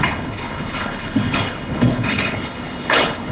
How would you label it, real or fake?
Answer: fake